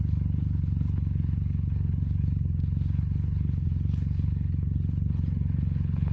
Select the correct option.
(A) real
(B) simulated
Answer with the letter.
B